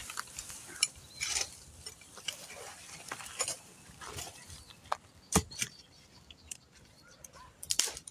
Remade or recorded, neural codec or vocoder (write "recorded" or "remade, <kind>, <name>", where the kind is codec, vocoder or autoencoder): remade, vocoder, BigVGAN v2